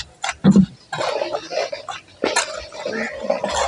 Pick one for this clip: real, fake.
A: real